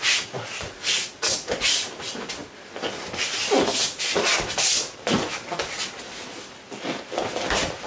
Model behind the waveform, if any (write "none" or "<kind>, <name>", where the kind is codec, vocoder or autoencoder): none